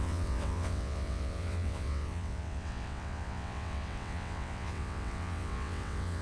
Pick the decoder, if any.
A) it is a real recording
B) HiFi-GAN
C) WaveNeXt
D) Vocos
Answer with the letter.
C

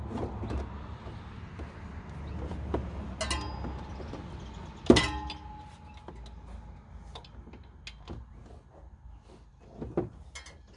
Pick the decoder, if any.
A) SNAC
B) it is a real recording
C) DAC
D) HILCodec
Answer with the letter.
B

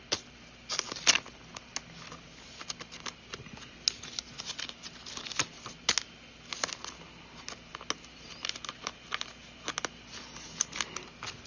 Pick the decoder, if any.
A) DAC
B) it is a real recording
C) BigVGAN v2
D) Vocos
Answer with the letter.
B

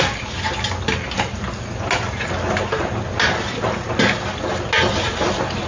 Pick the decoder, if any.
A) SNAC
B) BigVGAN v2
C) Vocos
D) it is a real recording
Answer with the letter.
D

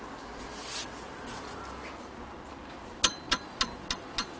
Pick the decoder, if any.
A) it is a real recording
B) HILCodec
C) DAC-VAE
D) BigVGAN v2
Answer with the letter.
A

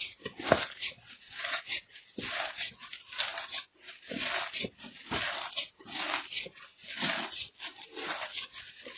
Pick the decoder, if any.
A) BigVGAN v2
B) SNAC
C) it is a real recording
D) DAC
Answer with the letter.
C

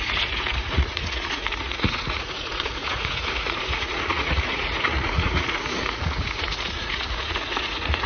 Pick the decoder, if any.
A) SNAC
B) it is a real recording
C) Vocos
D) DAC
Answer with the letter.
C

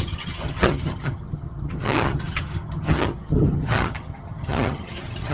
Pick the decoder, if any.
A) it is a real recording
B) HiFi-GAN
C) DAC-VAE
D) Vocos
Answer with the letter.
B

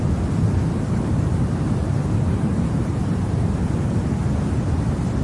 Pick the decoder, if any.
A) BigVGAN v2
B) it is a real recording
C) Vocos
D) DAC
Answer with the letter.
A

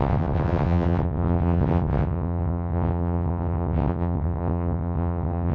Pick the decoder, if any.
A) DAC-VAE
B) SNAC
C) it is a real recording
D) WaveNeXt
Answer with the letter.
D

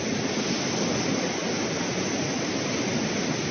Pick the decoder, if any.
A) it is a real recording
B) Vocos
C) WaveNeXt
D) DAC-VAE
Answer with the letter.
A